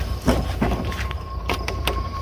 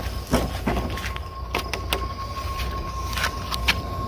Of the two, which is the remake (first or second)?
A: first